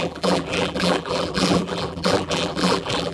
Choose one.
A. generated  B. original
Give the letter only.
A